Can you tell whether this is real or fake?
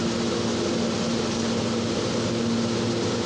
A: real